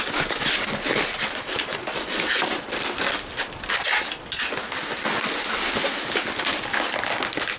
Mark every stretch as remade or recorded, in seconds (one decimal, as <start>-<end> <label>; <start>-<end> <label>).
0.0-7.6 recorded